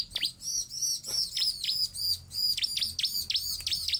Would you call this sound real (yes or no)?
yes